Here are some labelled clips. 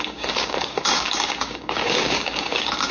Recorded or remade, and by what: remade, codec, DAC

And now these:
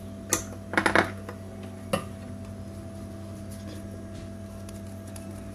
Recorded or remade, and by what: recorded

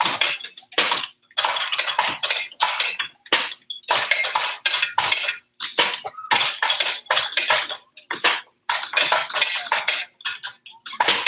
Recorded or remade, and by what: recorded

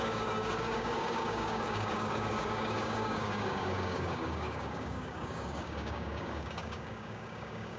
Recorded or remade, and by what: remade, codec, DAC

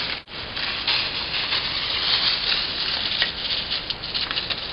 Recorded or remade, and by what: recorded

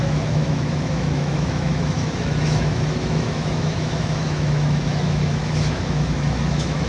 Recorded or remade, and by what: remade, autoencoder, DAC-VAE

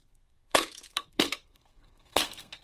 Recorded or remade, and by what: remade, codec, SNAC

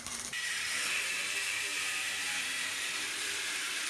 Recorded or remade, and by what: remade, vocoder, BigVGAN v2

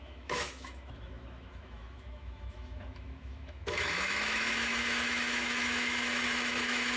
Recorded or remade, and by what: remade, autoencoder, DAC-VAE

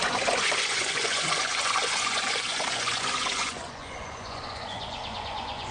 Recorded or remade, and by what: remade, vocoder, Vocos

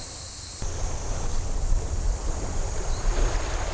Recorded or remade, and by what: recorded